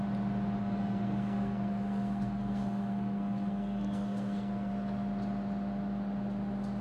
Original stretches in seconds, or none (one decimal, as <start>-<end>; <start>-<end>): 0.0-0.6; 4.7-6.8